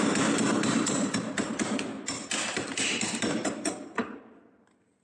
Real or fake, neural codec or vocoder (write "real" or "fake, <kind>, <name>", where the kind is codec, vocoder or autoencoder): fake, vocoder, BigVGAN v2